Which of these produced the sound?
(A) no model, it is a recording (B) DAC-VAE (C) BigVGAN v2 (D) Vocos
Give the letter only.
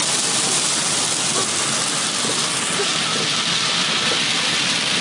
C